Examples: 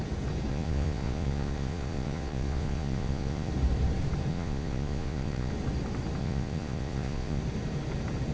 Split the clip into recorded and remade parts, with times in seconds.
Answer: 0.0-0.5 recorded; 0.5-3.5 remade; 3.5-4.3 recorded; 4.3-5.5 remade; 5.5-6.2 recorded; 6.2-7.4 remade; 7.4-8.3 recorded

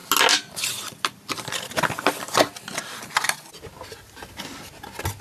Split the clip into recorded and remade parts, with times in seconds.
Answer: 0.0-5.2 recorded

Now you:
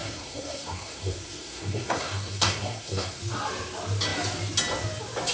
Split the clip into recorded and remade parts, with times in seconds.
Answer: 0.0-3.2 remade; 3.2-5.3 recorded

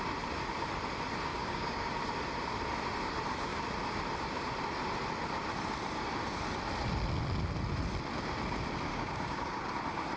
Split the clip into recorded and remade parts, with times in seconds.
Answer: 0.0-1.3 recorded; 1.3-1.9 remade; 1.9-8.9 recorded; 8.9-9.7 remade; 9.7-10.2 recorded

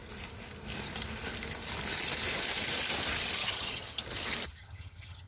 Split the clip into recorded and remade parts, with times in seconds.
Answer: 0.0-3.4 recorded; 3.4-4.0 remade; 4.0-4.6 recorded; 4.6-5.3 remade

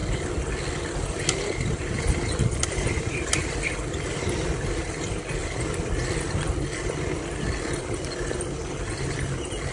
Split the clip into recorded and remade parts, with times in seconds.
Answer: 0.0-9.7 recorded